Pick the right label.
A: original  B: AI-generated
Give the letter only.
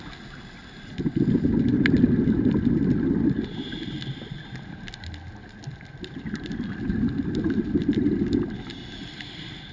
A